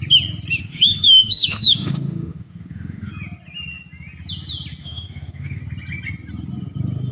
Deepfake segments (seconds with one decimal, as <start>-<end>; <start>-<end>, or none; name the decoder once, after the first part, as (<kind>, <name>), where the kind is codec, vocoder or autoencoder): 0.6-3.1 (autoencoder, DAC-VAE); 4.8-5.6